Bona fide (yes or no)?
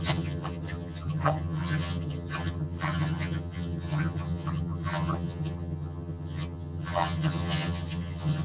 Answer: no